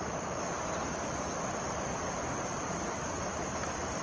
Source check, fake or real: real